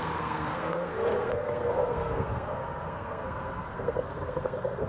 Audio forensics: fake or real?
fake